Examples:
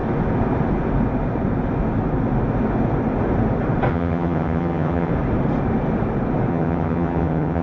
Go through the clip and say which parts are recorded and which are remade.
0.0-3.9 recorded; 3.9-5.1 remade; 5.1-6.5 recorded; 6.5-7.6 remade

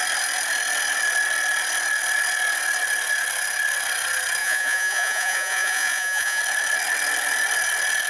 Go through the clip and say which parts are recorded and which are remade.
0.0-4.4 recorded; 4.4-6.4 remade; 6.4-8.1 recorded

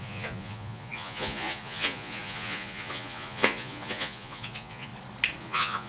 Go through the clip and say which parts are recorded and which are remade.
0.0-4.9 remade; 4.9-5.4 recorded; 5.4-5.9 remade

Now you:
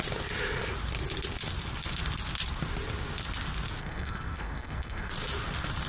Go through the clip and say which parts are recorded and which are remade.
0.0-3.8 recorded; 3.8-5.1 remade; 5.1-5.9 recorded

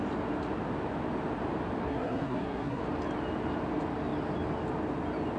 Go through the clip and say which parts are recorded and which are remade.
0.0-1.8 recorded; 1.8-2.8 remade; 2.8-5.4 recorded

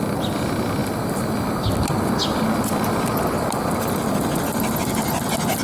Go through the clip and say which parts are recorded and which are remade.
0.0-5.6 recorded